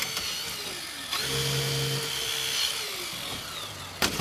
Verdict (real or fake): real